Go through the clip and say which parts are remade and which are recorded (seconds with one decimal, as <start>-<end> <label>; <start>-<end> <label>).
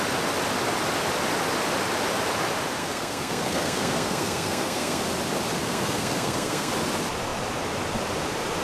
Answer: 0.0-2.8 recorded; 2.8-5.0 remade; 5.0-5.6 recorded; 5.6-6.7 remade; 6.7-8.6 recorded